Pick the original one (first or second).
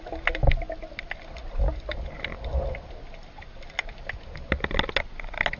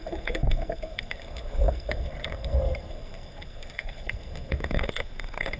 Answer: first